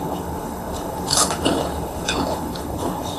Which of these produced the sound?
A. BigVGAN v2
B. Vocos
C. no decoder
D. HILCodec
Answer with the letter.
D